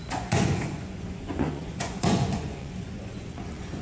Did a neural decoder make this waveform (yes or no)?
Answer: yes